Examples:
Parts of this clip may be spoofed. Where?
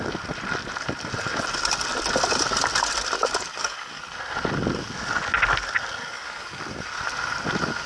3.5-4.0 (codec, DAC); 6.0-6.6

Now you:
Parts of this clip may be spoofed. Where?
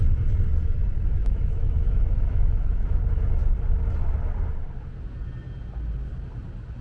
1.2-3.0 (autoencoder, DAC-VAE)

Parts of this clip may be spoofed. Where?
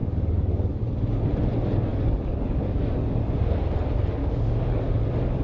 0.0-0.8 (codec, DAC); 1.9-3.2; 4.2-5.0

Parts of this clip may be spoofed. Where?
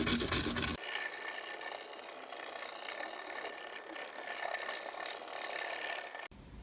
none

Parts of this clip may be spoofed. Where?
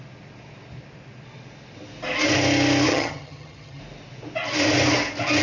2.9-3.8 (vocoder, HiFi-GAN)